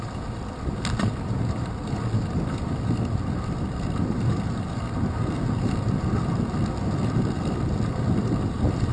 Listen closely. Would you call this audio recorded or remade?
recorded